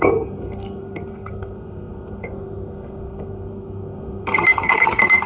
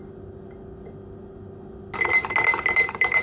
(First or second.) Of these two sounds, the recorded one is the second